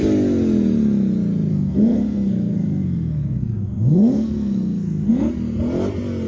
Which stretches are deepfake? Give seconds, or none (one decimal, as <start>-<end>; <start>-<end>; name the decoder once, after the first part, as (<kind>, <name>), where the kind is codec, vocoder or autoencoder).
1.5-5.3 (codec, SNAC)